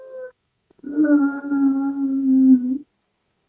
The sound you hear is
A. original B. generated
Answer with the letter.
B